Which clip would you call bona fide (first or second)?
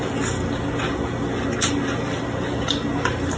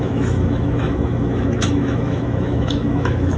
first